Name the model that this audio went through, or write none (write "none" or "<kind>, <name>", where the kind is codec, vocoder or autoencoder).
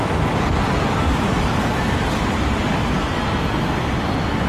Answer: none